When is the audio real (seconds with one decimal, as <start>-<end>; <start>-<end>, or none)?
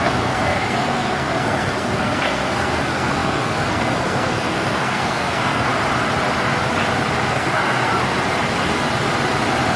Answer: 5.7-7.3; 7.9-9.8